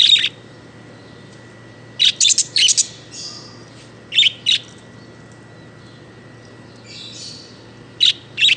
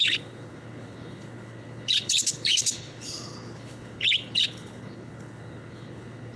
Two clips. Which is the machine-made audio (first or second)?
second